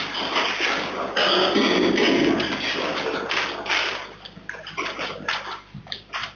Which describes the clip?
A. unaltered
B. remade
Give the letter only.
A